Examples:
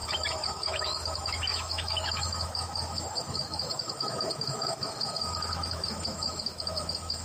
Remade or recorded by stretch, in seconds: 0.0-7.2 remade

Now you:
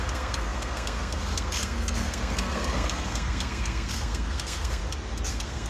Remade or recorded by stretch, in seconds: 0.0-4.8 remade; 4.8-5.3 recorded; 5.3-5.7 remade

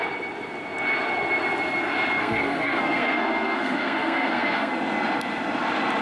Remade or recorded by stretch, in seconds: 0.0-2.2 recorded; 2.2-4.7 remade; 4.7-6.0 recorded

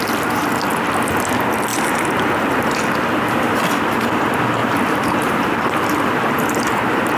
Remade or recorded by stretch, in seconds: 0.0-1.7 recorded; 1.7-2.7 remade; 2.7-4.6 recorded; 4.6-7.2 remade

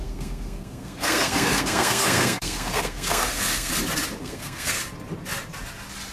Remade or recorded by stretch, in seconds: 0.0-3.7 remade; 3.7-4.2 recorded; 4.2-4.8 remade; 4.8-6.1 recorded